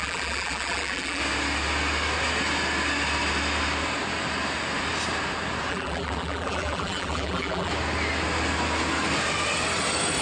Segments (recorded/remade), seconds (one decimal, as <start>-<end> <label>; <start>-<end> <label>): 0.0-1.2 remade; 1.2-5.7 recorded; 5.7-7.7 remade; 7.7-10.2 recorded

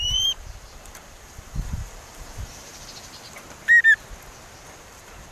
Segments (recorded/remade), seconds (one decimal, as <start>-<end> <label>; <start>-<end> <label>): 0.0-2.7 remade; 2.7-4.8 recorded; 4.8-5.3 remade

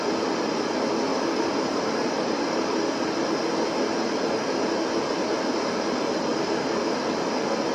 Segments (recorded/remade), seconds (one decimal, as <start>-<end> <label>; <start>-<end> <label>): 0.0-1.1 recorded; 1.1-3.0 remade; 3.0-7.7 recorded

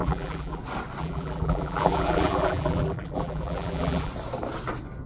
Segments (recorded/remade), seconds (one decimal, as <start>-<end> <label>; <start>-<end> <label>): 0.0-0.6 remade; 0.6-1.0 recorded; 1.0-4.1 remade; 4.1-5.1 recorded

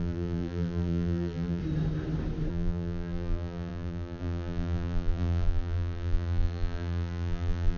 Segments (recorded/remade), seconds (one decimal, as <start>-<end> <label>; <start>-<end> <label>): 0.0-1.6 remade; 1.6-2.5 recorded; 2.5-7.8 remade

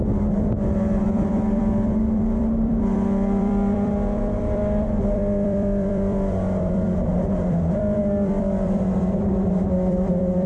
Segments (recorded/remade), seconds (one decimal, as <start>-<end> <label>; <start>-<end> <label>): 0.0-10.5 remade

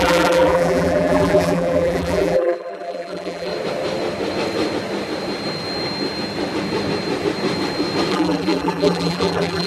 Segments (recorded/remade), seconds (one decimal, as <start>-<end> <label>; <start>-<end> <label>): 0.0-3.5 remade; 3.5-8.1 recorded; 8.1-9.7 remade